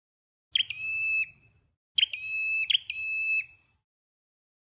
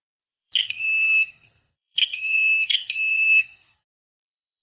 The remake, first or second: second